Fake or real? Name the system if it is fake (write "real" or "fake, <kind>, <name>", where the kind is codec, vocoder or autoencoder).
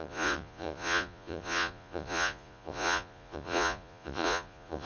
fake, vocoder, Vocos